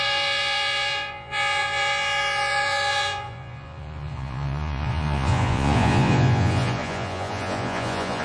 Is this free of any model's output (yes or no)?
no